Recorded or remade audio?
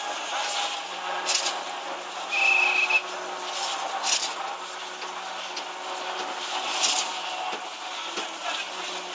recorded